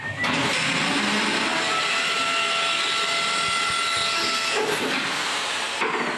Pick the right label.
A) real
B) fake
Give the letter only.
A